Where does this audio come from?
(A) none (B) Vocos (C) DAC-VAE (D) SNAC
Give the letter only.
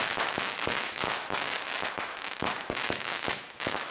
C